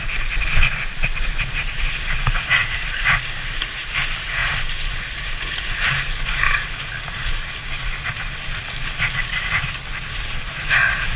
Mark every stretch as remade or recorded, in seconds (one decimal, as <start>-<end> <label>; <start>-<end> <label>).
0.0-11.2 recorded